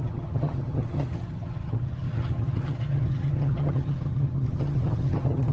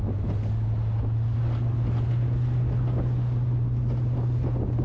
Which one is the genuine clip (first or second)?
second